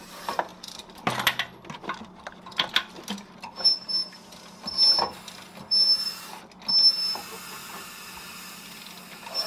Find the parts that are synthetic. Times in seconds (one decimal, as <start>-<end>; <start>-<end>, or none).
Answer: none